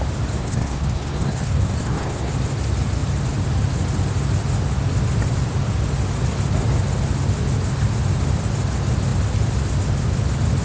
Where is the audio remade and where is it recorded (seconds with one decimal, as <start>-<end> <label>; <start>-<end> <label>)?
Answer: 0.0-0.4 recorded; 0.4-2.3 remade; 2.3-10.6 recorded